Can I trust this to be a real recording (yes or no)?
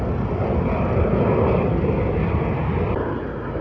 yes